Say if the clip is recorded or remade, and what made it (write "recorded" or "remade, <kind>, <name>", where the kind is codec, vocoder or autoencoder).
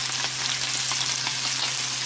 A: recorded